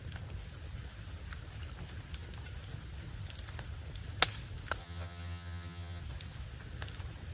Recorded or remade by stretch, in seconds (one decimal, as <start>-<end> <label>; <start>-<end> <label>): 0.0-4.8 recorded; 4.8-6.0 remade; 6.0-7.3 recorded